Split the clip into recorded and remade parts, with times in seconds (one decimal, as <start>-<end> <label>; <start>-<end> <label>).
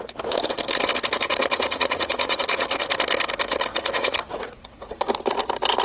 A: 0.0-1.3 recorded; 1.3-2.9 remade; 2.9-3.7 recorded; 3.7-4.9 remade; 4.9-5.8 recorded